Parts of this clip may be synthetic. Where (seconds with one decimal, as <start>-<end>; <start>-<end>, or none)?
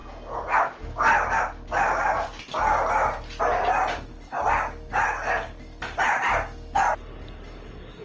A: none